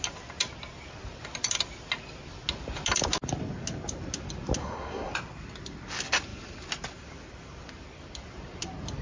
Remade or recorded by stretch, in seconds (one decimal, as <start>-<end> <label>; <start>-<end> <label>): 0.0-4.6 recorded; 4.6-5.1 remade; 5.1-9.0 recorded